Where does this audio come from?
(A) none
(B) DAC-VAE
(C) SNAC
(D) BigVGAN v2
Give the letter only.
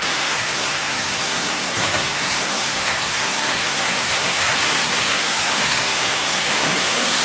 C